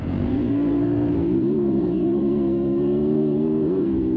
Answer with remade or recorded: remade